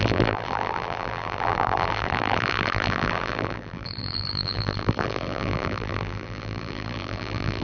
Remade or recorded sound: remade